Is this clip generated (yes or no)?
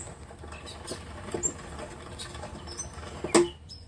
no